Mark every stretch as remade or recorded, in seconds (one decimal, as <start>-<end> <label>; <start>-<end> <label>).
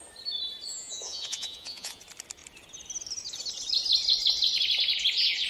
0.0-0.7 recorded; 0.7-2.0 remade; 2.0-5.5 recorded